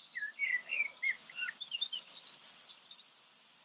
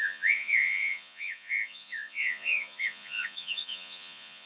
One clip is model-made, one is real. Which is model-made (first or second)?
second